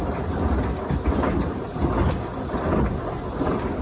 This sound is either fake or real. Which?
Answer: real